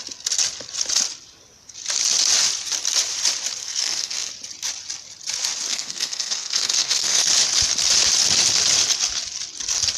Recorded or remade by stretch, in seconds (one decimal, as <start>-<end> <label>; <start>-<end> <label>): 0.0-3.6 recorded; 3.6-4.3 remade; 4.3-5.7 recorded; 5.7-7.3 remade; 7.3-10.0 recorded

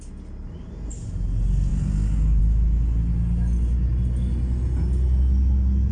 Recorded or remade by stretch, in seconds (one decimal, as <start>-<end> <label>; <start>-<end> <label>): 0.0-5.9 recorded

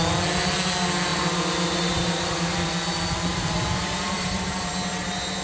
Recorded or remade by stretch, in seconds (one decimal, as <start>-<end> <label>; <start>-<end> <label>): 0.0-1.1 recorded; 1.1-2.7 remade; 2.7-3.3 recorded; 3.3-4.7 remade; 4.7-5.4 recorded

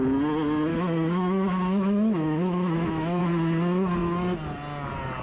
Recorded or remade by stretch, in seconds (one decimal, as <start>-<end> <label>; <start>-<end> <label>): 0.0-0.7 recorded; 0.7-3.2 remade; 3.2-5.2 recorded

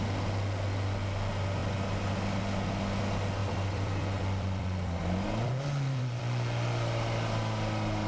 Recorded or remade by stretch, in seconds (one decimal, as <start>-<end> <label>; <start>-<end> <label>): 0.0-3.4 recorded; 3.4-6.2 remade; 6.2-8.1 recorded